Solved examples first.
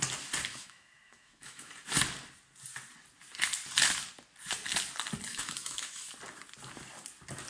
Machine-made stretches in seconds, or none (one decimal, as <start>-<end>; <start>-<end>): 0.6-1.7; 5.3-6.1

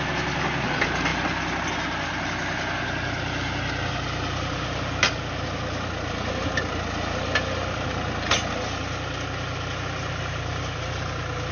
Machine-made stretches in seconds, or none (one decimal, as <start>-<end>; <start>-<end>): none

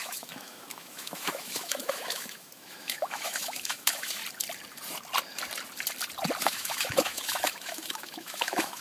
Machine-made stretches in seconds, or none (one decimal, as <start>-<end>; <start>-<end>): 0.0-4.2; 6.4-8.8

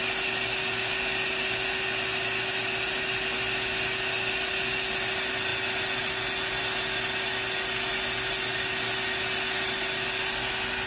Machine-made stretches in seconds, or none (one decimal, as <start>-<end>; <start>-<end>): none

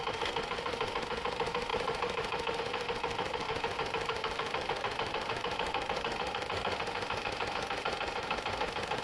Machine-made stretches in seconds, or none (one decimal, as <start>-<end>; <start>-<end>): 0.0-9.0

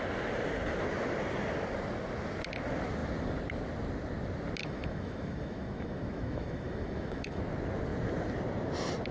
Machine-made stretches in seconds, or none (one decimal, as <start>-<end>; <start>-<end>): 4.6-7.4

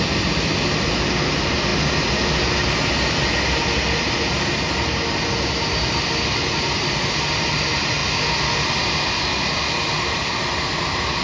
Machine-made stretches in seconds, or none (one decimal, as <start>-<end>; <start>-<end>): none